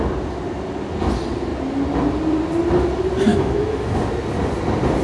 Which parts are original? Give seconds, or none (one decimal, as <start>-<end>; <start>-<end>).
0.0-3.3; 4.0-5.0